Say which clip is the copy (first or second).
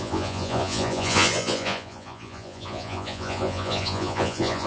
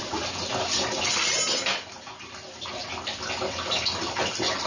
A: first